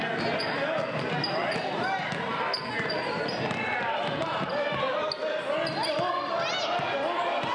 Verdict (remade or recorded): recorded